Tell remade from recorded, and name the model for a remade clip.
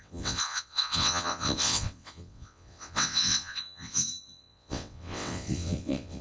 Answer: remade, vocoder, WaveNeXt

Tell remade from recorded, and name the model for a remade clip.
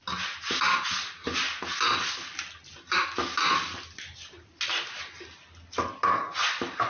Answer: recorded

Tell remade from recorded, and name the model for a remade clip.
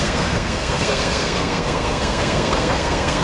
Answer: remade, codec, SNAC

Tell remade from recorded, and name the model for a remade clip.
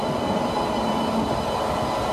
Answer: recorded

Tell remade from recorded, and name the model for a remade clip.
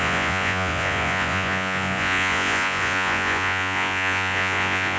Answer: remade, vocoder, Vocos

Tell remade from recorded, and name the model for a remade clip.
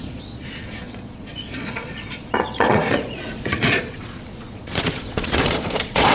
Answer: remade, vocoder, Vocos